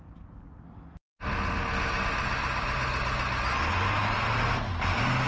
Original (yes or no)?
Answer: yes